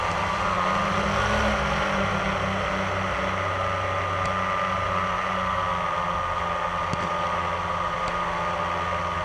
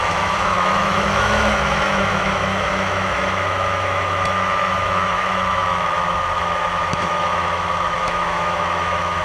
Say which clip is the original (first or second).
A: first